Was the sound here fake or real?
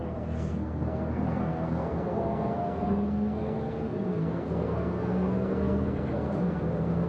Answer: fake